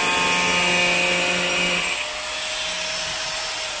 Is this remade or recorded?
recorded